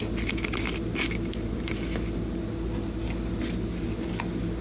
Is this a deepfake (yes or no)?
no